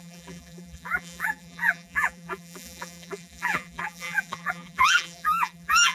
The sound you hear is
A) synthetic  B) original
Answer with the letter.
A